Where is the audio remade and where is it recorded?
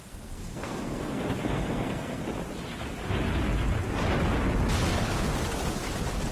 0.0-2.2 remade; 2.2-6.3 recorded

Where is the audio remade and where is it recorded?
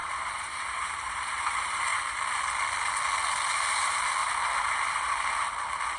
0.0-1.4 remade; 1.4-4.2 recorded; 4.2-5.5 remade; 5.5-6.0 recorded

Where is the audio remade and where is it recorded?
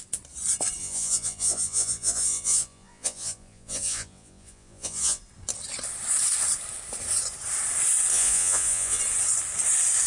0.0-0.8 recorded; 0.8-5.2 remade; 5.2-8.1 recorded; 8.1-9.0 remade; 9.0-10.1 recorded